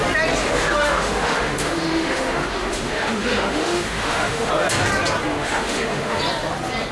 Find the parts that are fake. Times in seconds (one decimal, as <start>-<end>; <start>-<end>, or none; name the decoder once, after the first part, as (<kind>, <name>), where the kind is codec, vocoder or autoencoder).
0.4-4.5 (autoencoder, DAC-VAE); 5.3-6.2